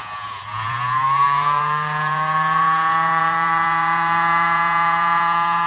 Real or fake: fake